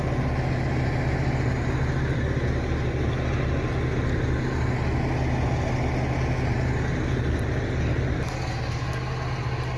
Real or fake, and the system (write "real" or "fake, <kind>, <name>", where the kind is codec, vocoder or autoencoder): real